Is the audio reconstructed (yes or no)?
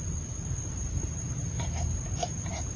no